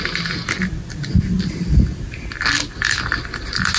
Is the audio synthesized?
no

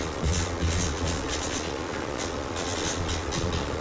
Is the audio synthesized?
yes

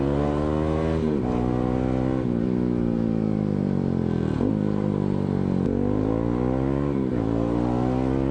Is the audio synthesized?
no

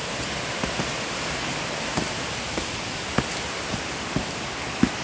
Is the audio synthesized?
no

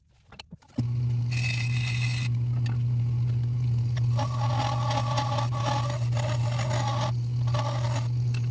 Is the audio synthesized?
no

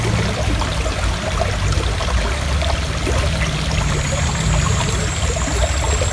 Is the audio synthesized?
no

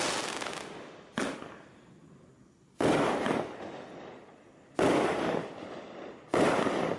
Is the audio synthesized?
no